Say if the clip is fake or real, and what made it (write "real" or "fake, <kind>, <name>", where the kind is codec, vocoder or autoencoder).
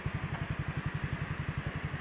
real